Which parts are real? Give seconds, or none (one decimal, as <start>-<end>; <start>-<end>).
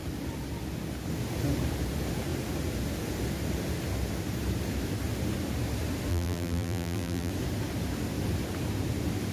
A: 0.0-6.1; 7.3-9.3